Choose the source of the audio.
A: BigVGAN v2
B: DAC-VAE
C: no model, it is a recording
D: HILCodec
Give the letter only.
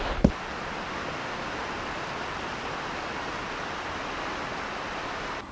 C